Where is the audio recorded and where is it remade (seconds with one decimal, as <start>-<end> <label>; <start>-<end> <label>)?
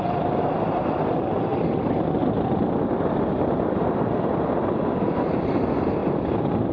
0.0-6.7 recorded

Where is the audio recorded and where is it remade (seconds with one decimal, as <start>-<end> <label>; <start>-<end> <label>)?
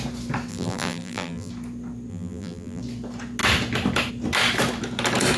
0.0-0.5 recorded; 0.5-1.5 remade; 1.5-2.1 recorded; 2.1-2.8 remade; 2.8-5.4 recorded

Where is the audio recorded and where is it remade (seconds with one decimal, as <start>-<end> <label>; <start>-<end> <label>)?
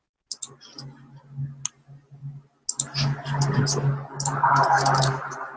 0.0-5.6 recorded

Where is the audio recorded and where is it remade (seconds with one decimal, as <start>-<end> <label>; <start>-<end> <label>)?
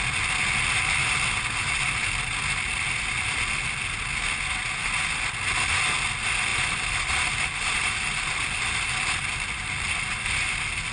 0.0-6.5 recorded; 6.5-10.0 remade; 10.0-10.9 recorded